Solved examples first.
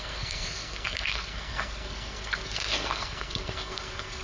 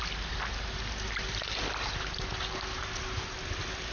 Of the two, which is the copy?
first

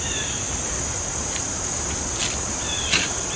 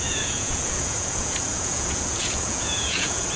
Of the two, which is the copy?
second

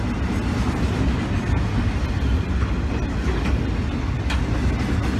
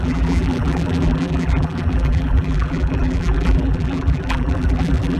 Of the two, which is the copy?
second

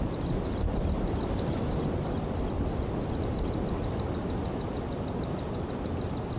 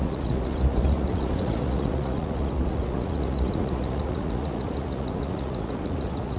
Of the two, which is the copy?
second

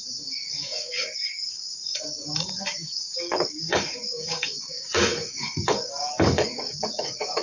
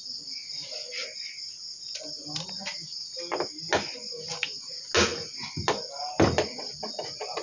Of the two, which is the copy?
first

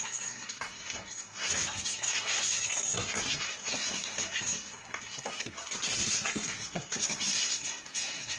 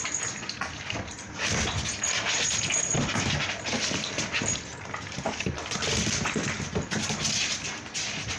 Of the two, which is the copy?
first